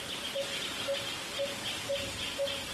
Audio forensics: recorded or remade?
recorded